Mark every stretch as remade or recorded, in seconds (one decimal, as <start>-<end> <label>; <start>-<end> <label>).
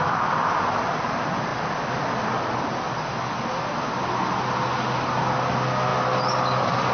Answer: 0.0-6.9 recorded